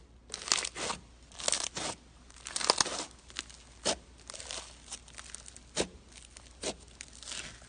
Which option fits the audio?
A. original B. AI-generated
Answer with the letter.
A